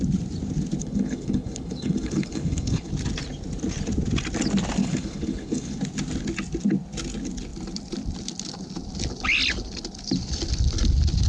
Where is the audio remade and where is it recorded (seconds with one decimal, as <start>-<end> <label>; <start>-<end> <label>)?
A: 0.0-0.8 recorded; 0.8-2.9 remade; 2.9-4.8 recorded; 4.8-5.8 remade; 5.8-11.3 recorded